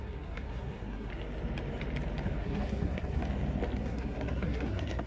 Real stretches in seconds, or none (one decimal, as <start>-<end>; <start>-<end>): 1.1-2.4; 3.2-3.8